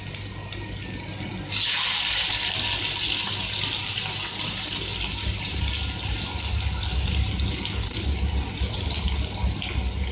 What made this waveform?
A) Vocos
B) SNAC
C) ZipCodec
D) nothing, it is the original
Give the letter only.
D